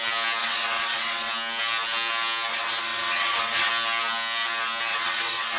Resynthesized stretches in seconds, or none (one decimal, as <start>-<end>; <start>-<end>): 0.4-1.3; 2.5-3.7; 4.9-5.6